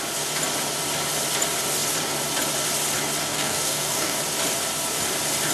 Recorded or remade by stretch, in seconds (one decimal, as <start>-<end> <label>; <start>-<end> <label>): 0.0-3.2 recorded; 3.2-4.2 remade; 4.2-5.5 recorded